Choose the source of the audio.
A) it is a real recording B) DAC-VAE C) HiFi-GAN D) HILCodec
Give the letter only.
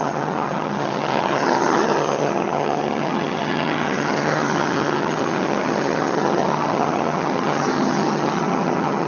C